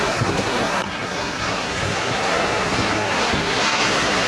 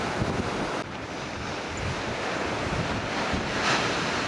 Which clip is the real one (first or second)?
second